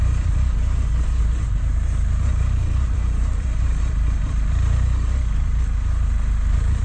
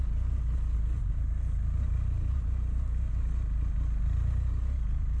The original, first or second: second